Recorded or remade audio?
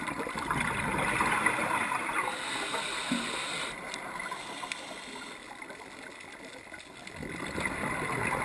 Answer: recorded